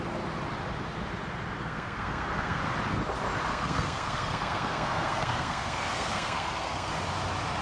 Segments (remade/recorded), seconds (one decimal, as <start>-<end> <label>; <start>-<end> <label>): 0.0-1.6 recorded; 1.6-2.6 remade; 2.6-3.5 recorded; 3.5-6.9 remade; 6.9-7.6 recorded